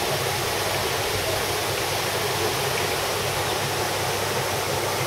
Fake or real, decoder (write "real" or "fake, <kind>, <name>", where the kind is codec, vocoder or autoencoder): real